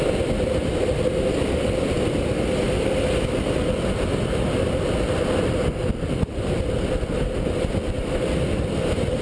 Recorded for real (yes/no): yes